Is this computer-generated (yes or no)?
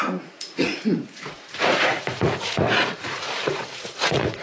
yes